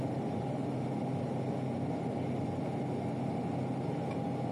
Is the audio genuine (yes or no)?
yes